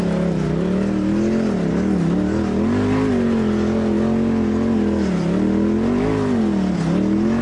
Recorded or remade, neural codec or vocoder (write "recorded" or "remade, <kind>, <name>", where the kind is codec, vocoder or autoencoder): recorded